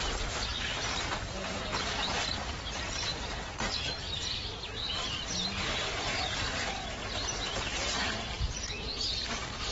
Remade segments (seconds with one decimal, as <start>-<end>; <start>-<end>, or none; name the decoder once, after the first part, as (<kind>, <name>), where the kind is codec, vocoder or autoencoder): none